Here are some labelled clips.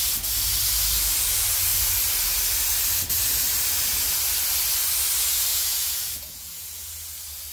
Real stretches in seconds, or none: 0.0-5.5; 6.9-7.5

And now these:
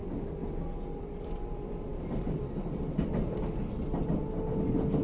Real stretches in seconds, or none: 0.0-5.0

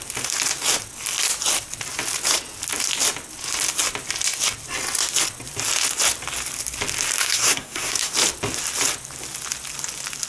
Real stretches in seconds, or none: 0.0-7.2; 8.1-10.3

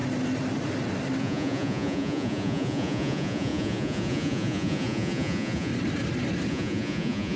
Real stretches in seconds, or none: 0.0-1.2; 5.7-6.5